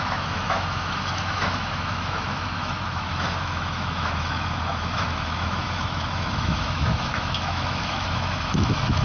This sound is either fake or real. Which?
fake